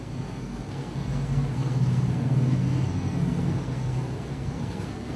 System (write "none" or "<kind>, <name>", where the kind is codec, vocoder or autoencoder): codec, SNAC